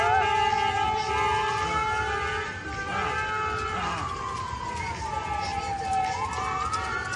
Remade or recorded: recorded